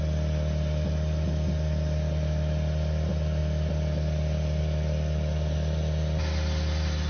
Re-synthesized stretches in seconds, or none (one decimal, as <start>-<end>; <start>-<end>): none